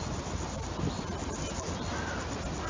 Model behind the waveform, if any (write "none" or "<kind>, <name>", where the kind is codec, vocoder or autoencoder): none